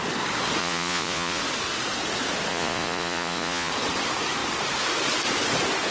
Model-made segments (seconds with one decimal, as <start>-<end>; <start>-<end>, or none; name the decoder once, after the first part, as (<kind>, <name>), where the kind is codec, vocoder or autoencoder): 0.6-1.4 (vocoder, Vocos); 2.5-3.7